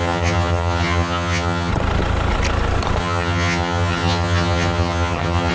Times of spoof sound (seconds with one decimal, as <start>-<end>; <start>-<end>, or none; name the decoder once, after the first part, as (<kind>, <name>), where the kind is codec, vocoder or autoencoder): 0.0-1.7 (vocoder, HiFi-GAN); 3.0-5.5